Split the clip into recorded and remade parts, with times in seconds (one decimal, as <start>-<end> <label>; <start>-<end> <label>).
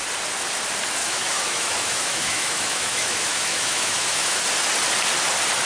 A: 0.0-1.0 recorded; 1.0-4.4 remade; 4.4-5.6 recorded